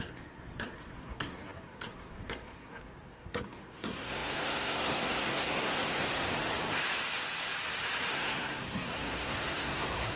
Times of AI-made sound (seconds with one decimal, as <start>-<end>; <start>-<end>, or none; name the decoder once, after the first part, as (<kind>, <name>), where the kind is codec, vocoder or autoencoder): 0.0-6.3 (codec, SNAC); 8.1-10.2